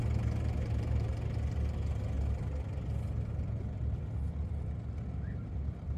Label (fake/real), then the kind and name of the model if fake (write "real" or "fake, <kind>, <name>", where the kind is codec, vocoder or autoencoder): real